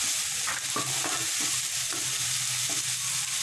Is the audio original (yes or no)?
yes